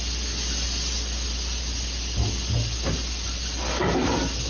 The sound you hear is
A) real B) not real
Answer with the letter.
A